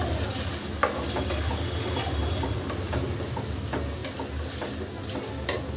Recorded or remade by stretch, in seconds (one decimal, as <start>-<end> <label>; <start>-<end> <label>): 0.0-5.8 recorded